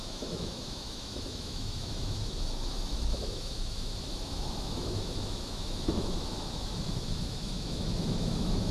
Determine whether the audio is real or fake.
fake